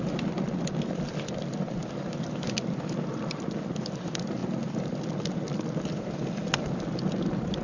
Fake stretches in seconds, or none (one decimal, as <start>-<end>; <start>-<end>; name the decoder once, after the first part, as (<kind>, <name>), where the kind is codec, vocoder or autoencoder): none